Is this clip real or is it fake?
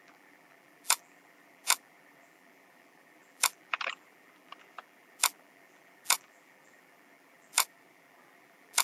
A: fake